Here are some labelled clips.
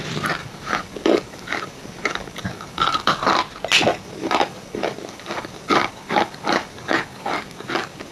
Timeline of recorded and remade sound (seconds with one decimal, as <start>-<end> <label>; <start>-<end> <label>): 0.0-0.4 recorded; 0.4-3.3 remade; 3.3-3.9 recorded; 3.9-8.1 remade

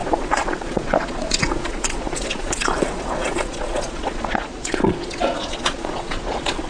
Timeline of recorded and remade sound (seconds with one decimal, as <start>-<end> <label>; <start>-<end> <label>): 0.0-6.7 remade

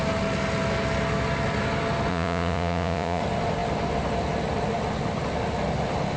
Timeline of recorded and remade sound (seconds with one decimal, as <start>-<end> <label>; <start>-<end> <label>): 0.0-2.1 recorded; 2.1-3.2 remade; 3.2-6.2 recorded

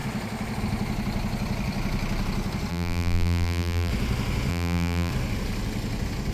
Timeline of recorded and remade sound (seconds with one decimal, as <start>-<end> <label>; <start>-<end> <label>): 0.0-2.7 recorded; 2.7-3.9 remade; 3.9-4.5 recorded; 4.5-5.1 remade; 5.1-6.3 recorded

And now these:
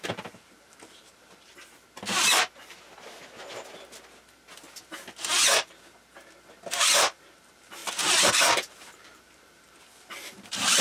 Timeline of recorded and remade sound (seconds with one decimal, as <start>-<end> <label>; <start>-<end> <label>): 0.0-1.5 remade; 1.5-6.8 recorded; 6.8-7.8 remade; 7.8-8.3 recorded; 8.3-10.8 remade